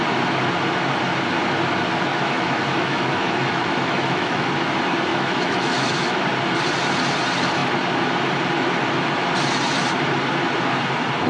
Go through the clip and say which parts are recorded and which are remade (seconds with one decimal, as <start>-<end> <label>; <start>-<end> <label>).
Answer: 0.0-2.1 recorded; 2.1-4.5 remade; 4.5-5.1 recorded; 5.1-6.2 remade; 6.2-11.3 recorded